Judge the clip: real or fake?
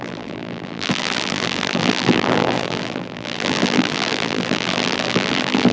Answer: fake